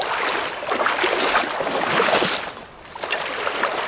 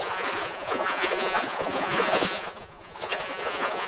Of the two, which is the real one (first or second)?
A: first